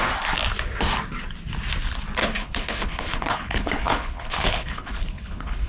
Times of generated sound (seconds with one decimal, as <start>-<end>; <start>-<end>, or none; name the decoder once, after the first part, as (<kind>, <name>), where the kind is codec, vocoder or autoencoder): 2.2-5.7 (codec, HILCodec)

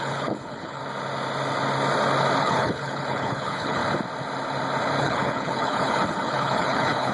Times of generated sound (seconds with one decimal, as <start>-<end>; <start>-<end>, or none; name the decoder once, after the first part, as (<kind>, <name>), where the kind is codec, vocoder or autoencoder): 0.0-0.8 (codec, HILCodec); 2.4-3.8; 5.0-7.1